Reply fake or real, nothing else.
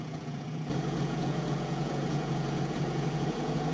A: fake